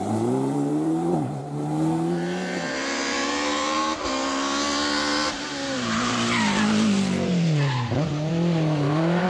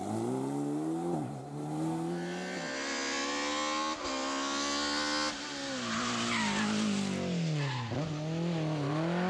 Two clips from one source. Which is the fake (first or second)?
first